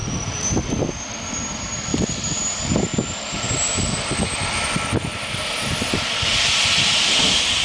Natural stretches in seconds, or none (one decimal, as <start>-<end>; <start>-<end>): 0.0-1.9; 2.4-7.6